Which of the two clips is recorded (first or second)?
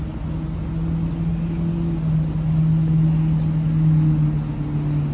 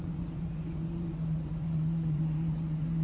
first